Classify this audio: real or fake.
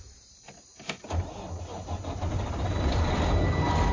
real